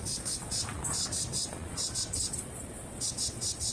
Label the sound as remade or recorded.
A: remade